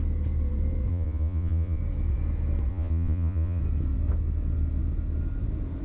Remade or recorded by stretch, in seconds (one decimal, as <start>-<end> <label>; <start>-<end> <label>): 0.0-0.9 recorded; 0.9-1.8 remade; 1.8-2.7 recorded; 2.7-3.6 remade; 3.6-5.8 recorded